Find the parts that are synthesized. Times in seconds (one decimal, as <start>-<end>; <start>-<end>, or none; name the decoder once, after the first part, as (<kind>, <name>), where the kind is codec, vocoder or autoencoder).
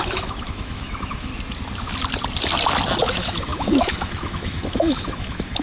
0.0-1.3 (autoencoder, DAC-VAE); 3.0-5.6